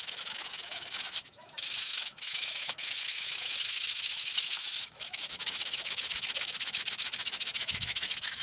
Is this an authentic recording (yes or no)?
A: no